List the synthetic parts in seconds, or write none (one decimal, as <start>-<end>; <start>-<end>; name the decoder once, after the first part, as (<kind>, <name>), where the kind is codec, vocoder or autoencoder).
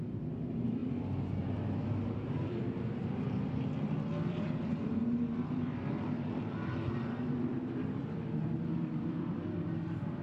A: 0.0-10.2 (vocoder, BigVGAN v2)